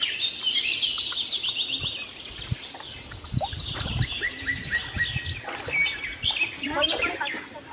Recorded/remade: recorded